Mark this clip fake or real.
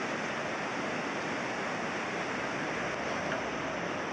real